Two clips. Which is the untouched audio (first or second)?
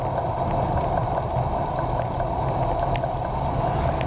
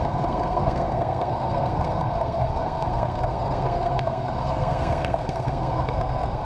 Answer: first